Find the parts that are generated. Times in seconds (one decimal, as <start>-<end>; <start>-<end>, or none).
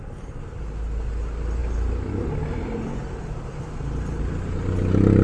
none